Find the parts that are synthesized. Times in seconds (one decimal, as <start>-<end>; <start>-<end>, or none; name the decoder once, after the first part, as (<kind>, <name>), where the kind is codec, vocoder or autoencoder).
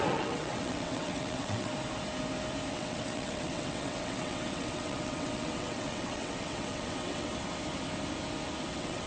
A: 0.0-1.7 (vocoder, WaveNeXt); 2.7-7.3; 8.7-9.1